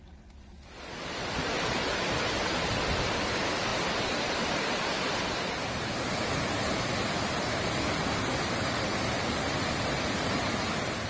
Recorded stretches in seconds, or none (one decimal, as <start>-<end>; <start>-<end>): 0.0-11.1